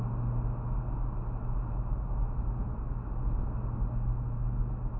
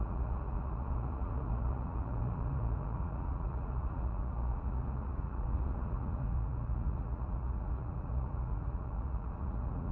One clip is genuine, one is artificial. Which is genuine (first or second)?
first